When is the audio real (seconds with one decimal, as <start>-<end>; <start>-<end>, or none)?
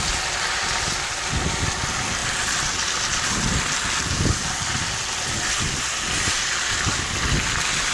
0.0-7.9